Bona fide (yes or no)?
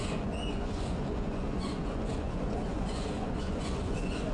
no